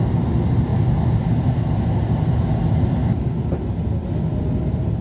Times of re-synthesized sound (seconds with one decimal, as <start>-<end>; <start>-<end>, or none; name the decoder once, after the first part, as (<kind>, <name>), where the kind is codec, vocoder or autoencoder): none

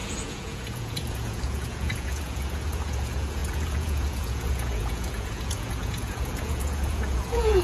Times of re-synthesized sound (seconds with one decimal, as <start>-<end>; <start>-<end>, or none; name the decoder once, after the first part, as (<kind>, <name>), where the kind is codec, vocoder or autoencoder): 0.0-7.6 (vocoder, Vocos)

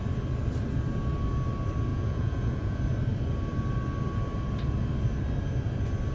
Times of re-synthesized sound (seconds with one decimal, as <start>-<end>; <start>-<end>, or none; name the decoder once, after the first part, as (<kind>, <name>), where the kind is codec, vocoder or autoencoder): 1.9-2.8 (vocoder, Vocos)

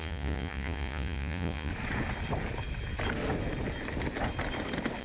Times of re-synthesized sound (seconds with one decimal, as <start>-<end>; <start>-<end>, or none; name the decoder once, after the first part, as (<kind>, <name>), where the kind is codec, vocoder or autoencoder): 0.0-1.7 (vocoder, Vocos)

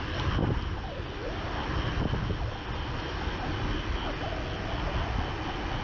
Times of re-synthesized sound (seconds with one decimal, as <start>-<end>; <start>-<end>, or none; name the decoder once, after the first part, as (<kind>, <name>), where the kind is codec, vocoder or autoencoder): none

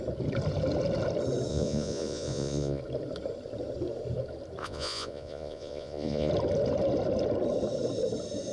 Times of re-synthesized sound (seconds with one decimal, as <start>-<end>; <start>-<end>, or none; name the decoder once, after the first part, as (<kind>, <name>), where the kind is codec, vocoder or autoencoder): 1.5-2.8 (vocoder, Vocos); 4.6-6.3

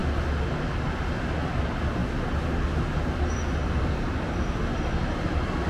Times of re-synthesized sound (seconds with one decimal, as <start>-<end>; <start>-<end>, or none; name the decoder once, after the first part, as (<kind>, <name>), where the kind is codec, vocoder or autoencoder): none

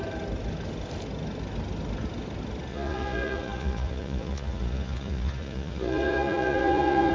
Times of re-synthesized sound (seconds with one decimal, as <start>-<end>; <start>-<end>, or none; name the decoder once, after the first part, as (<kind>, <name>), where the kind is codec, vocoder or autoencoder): 2.7-7.1 (vocoder, Vocos)